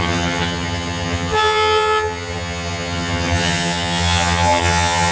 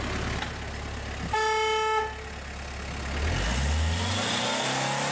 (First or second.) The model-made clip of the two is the first